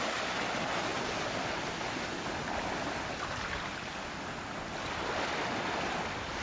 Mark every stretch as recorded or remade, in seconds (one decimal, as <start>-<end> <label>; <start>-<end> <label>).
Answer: 0.0-6.4 recorded